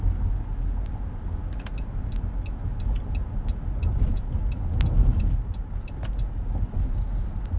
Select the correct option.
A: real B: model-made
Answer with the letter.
A